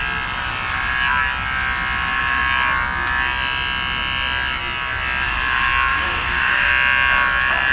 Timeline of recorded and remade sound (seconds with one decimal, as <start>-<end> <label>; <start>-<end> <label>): 0.0-5.9 recorded; 5.9-6.7 remade; 6.7-7.7 recorded